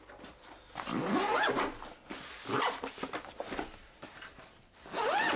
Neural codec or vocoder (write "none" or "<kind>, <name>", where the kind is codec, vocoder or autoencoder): none